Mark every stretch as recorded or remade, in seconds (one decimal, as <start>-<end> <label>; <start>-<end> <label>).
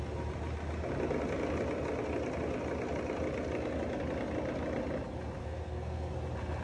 0.0-5.4 recorded; 5.4-6.1 remade; 6.1-6.6 recorded